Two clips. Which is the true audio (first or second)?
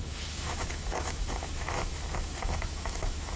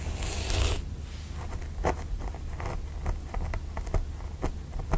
second